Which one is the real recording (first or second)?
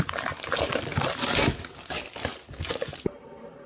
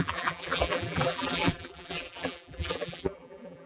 first